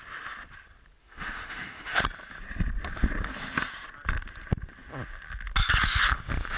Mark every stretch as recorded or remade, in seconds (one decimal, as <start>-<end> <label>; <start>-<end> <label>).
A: 0.0-1.0 recorded; 1.0-2.0 remade; 2.0-6.6 recorded

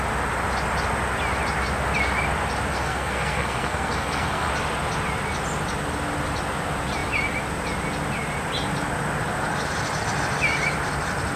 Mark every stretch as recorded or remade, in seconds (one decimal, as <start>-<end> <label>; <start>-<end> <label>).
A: 0.0-2.7 recorded; 2.7-4.5 remade; 4.5-11.4 recorded

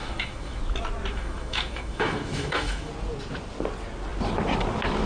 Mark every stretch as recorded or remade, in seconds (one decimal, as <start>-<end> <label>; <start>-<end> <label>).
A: 0.0-0.6 remade; 0.6-1.1 recorded; 1.1-2.9 remade; 2.9-5.1 recorded

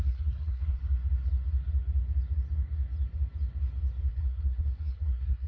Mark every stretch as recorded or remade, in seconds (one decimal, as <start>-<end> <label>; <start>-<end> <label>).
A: 0.0-0.8 remade; 0.8-4.1 recorded; 4.1-5.5 remade

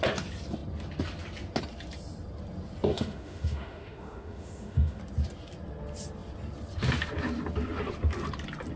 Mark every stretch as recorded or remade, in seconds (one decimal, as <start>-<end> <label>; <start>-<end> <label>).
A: 0.0-2.9 recorded; 2.9-5.0 remade; 5.0-8.8 recorded

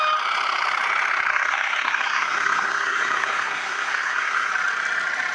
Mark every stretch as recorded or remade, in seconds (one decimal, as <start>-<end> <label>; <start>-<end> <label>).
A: 0.0-1.3 recorded; 1.3-4.5 remade; 4.5-5.3 recorded

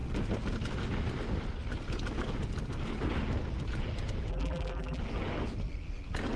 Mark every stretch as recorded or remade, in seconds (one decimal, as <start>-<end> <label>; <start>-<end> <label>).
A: 0.0-4.3 recorded; 4.3-5.0 remade; 5.0-6.4 recorded

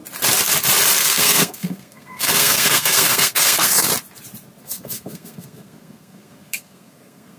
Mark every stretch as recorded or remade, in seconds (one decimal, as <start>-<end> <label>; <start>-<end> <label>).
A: 0.0-1.0 recorded; 1.0-3.9 remade; 3.9-4.6 recorded; 4.6-7.4 remade